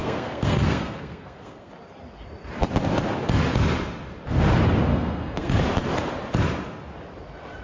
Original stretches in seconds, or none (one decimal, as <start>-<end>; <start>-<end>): 1.7-4.9; 5.6-7.6